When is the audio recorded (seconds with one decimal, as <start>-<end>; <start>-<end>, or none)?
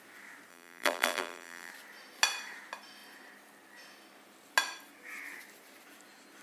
0.0-0.5; 1.7-6.4